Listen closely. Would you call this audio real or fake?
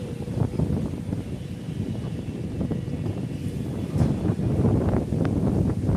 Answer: fake